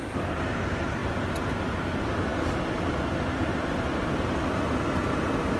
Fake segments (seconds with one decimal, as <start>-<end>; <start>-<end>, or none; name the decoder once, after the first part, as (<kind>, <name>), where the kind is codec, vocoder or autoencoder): none